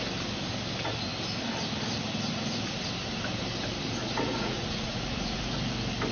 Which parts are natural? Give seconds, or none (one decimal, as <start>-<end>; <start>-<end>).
0.0-4.0; 5.5-6.1